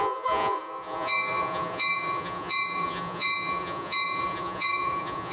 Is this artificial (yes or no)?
yes